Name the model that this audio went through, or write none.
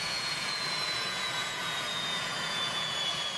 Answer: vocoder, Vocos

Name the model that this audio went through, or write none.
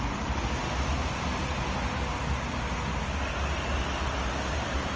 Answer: none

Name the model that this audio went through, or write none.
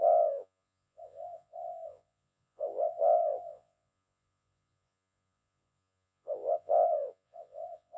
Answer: vocoder, Vocos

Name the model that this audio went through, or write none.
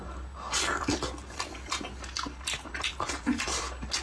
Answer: none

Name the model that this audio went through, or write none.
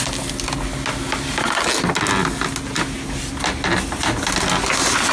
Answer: none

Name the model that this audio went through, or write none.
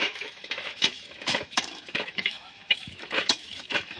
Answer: autoencoder, DAC-VAE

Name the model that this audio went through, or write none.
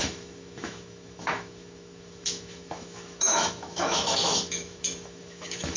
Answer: autoencoder, DAC-VAE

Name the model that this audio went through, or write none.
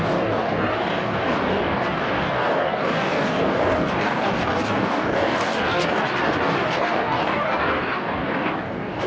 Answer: codec, DAC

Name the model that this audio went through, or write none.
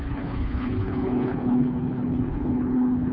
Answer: codec, HILCodec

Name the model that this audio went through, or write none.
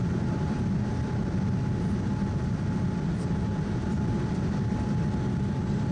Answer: vocoder, BigVGAN v2